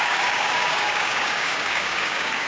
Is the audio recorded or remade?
remade